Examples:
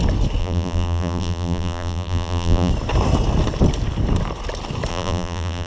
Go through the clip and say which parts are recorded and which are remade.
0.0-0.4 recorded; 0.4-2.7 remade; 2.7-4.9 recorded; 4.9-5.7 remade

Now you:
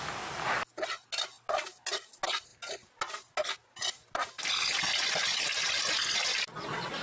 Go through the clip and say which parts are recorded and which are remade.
0.0-7.0 recorded

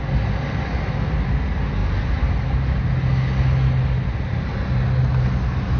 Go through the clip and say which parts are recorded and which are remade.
0.0-5.8 recorded

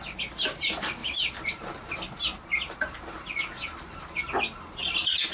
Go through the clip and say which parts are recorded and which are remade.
0.0-5.3 recorded

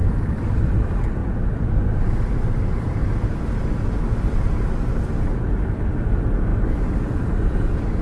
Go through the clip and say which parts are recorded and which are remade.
0.0-0.7 remade; 0.7-6.5 recorded; 6.5-7.6 remade; 7.6-8.0 recorded